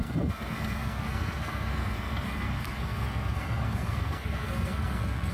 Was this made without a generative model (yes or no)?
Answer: no